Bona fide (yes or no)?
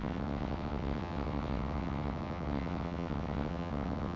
no